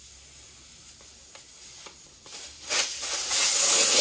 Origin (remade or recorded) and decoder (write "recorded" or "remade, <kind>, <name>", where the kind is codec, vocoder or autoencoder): recorded